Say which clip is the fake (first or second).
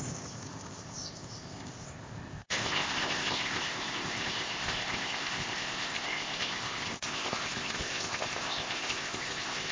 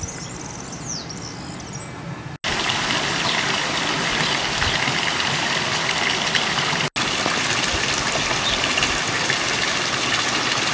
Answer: first